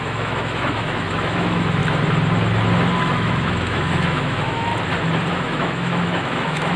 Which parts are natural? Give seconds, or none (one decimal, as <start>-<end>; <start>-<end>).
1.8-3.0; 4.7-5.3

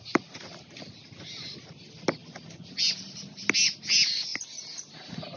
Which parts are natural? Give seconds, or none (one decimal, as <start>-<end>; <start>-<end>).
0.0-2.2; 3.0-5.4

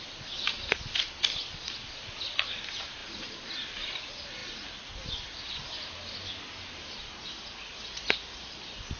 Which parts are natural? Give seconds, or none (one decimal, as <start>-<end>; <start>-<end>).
0.0-9.0